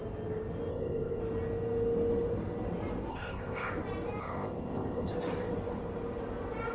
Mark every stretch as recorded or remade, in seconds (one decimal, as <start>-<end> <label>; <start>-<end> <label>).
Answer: 0.0-0.7 recorded; 0.7-1.2 remade; 1.2-3.1 recorded; 3.1-3.7 remade; 3.7-4.2 recorded; 4.2-5.1 remade; 5.1-6.7 recorded